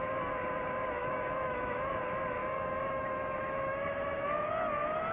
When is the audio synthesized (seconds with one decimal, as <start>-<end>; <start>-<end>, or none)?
1.0-1.9; 2.4-4.5